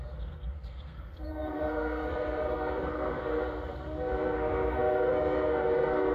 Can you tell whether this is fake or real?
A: fake